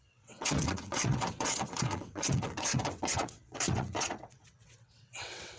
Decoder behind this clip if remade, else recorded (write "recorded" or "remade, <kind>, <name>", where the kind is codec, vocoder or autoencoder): remade, vocoder, WaveNeXt